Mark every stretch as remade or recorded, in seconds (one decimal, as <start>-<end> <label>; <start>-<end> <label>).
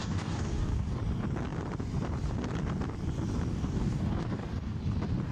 0.0-1.0 remade; 1.0-3.5 recorded; 3.5-4.8 remade; 4.8-5.3 recorded